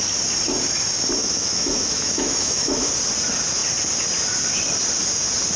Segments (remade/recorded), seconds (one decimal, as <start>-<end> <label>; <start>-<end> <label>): 0.0-1.2 recorded; 1.2-2.9 remade; 2.9-5.6 recorded